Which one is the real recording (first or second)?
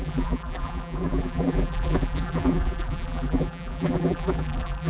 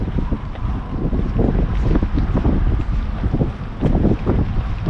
second